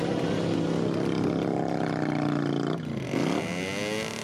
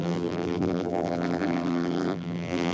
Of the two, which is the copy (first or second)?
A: second